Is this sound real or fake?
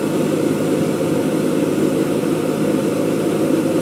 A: real